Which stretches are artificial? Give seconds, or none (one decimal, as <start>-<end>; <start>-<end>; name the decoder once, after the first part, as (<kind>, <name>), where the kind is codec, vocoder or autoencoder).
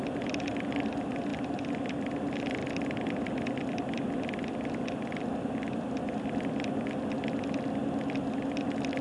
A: none